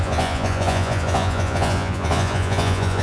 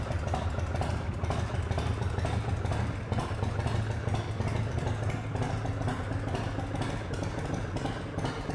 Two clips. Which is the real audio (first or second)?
second